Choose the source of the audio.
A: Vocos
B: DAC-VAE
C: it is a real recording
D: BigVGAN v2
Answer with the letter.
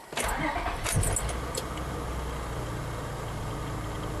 C